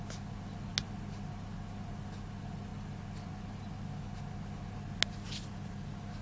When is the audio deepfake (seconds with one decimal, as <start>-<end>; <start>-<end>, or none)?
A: none